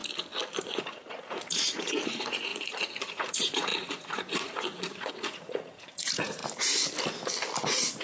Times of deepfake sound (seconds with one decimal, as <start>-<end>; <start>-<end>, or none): 0.6-6.4; 7.6-8.0